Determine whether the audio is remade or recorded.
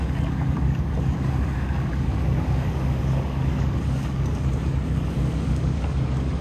remade